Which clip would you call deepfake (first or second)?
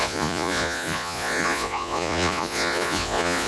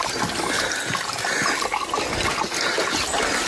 first